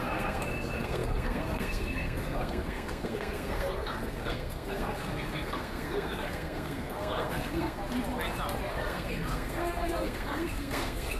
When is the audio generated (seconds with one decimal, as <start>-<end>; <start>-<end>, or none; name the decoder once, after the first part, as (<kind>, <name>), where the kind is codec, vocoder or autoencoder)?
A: 0.0-7.8 (codec, SNAC); 8.7-11.2